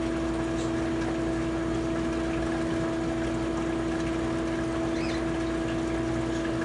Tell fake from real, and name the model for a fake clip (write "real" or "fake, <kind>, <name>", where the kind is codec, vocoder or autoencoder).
real